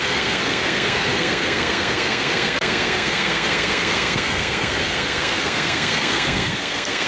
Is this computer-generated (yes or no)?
yes